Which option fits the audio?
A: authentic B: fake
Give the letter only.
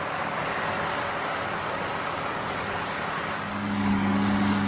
B